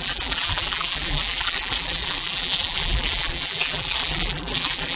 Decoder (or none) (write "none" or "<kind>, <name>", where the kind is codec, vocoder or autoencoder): vocoder, BigVGAN v2